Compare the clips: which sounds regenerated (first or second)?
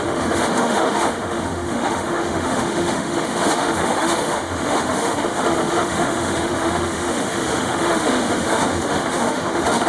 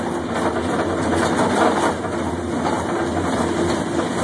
first